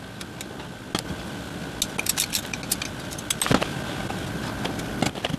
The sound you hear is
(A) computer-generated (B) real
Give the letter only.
B